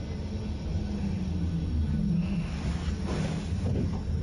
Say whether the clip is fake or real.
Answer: real